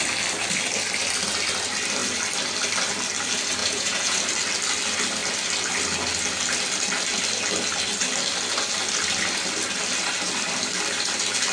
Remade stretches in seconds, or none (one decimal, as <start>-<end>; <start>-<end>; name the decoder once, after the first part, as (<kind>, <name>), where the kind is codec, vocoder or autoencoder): 3.6-4.2 (vocoder, Vocos)